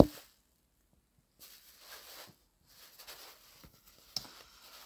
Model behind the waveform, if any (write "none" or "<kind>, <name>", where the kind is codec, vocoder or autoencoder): none